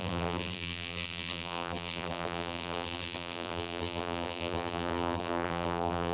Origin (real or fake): fake